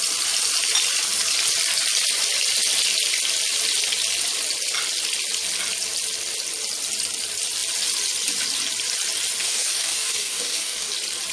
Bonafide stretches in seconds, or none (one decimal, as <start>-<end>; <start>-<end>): 0.0-9.4; 10.9-11.3